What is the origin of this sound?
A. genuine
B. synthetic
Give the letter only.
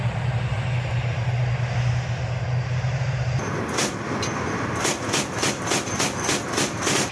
A